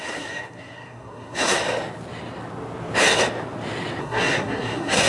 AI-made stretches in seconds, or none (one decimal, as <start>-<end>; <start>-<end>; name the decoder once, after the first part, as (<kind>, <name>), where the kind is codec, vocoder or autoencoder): 0.0-1.6 (codec, SNAC); 4.0-5.1